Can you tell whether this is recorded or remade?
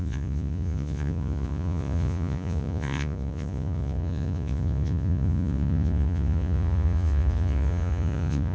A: remade